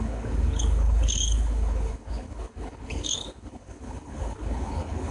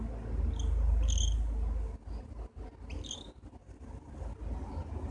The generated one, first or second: first